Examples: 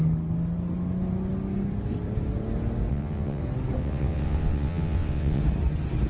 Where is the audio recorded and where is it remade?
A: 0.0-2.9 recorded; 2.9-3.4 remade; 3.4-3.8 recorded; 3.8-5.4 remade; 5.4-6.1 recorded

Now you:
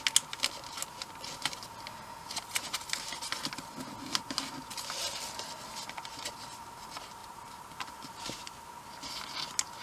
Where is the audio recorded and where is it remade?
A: 0.0-7.2 recorded; 7.2-8.9 remade; 8.9-9.8 recorded